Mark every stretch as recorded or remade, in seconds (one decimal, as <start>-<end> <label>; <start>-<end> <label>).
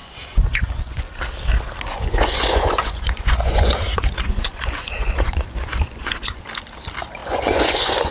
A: 0.0-1.1 remade; 1.1-1.9 recorded; 1.9-6.4 remade; 6.4-7.2 recorded; 7.2-8.1 remade